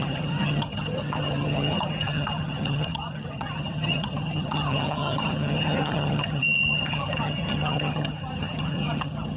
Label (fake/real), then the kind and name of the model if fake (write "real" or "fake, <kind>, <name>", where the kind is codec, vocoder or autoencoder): fake, vocoder, HiFi-GAN